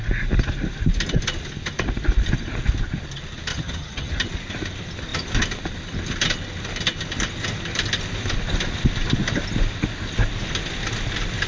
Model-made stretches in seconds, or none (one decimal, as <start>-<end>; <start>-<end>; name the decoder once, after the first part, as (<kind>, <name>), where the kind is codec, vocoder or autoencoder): 3.5-4.1 (vocoder, HiFi-GAN)